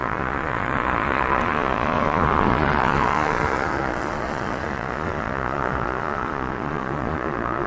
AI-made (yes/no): yes